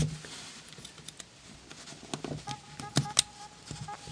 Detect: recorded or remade recorded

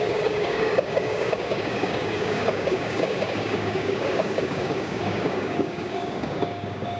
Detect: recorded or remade remade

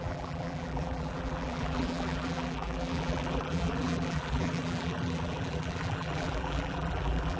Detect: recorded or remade remade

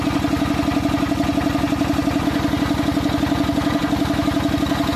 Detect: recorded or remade recorded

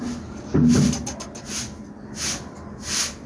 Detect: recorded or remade recorded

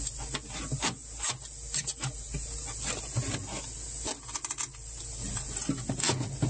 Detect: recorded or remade recorded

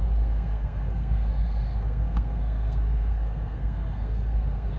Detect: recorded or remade remade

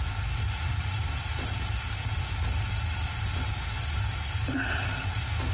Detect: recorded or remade recorded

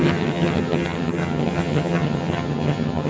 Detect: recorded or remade remade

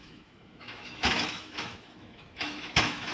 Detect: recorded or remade remade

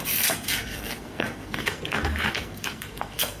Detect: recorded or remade remade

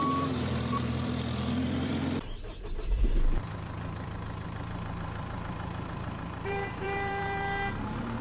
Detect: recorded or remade remade